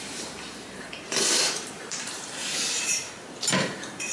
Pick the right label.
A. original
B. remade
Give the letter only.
B